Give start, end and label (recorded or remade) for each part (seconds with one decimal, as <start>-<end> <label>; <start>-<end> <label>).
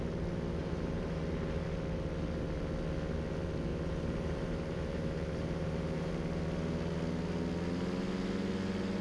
0.0-0.6 recorded; 0.6-1.2 remade; 1.2-3.7 recorded; 3.7-6.1 remade; 6.1-9.0 recorded